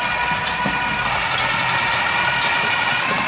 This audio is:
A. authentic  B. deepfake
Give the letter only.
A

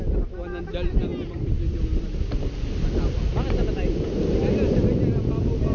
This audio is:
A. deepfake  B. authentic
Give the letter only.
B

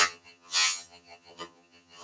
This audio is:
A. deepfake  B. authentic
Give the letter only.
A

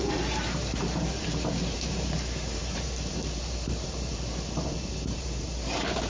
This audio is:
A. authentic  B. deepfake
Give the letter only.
B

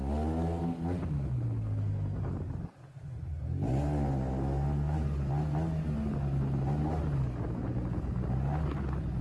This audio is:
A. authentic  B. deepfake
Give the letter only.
A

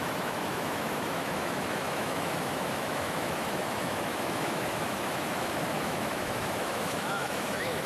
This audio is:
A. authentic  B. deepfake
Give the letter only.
B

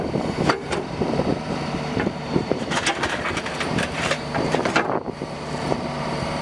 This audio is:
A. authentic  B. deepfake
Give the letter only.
B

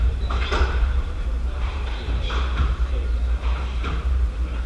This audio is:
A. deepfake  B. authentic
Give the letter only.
A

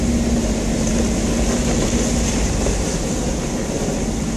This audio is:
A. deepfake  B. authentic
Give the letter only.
B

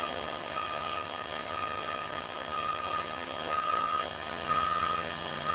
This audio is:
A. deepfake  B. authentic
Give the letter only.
A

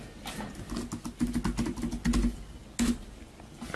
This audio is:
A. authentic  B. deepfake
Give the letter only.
A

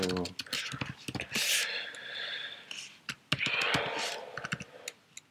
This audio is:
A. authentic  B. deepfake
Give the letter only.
A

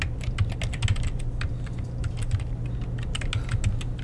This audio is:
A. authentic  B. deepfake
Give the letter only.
A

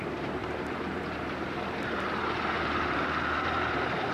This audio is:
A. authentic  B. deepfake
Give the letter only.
B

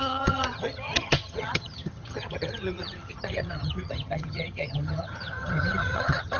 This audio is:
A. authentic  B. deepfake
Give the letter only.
B